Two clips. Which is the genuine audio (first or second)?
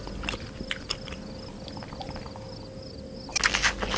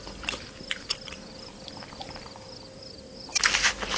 first